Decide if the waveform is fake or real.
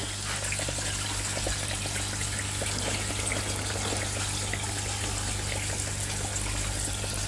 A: real